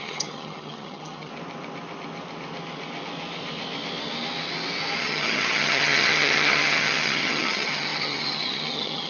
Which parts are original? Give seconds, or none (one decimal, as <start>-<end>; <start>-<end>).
1.3-5.0